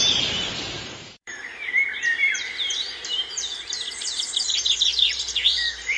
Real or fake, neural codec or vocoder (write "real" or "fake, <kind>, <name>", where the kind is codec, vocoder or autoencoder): fake, vocoder, BigVGAN v2